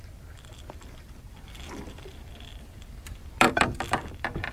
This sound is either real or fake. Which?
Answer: fake